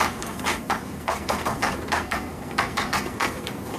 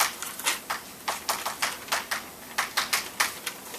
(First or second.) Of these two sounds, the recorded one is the second